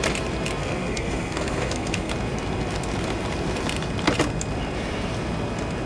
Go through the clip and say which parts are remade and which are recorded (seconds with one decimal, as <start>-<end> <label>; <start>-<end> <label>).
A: 0.0-0.6 recorded; 0.6-2.1 remade; 2.1-5.9 recorded